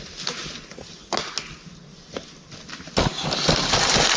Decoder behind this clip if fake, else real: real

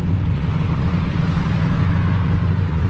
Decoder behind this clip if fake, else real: fake, vocoder, Vocos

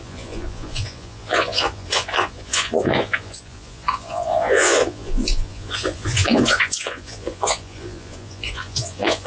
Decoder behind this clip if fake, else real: fake, vocoder, Vocos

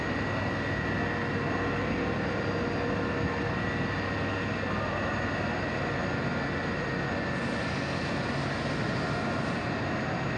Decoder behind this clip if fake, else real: real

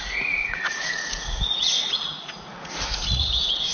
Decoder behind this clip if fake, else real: fake, vocoder, Vocos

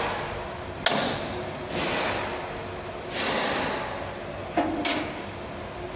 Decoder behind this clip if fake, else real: real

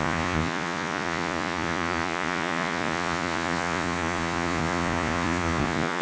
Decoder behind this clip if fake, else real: fake, vocoder, Vocos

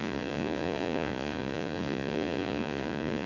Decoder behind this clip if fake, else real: fake, vocoder, Vocos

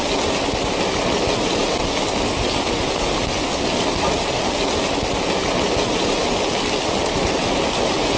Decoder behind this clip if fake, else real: real